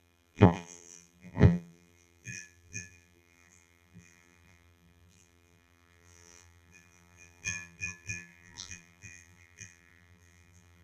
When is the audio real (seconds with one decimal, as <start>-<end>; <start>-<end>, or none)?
none